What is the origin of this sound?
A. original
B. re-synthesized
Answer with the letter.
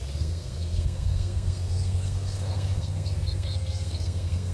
B